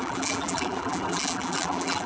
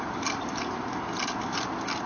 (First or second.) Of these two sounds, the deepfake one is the first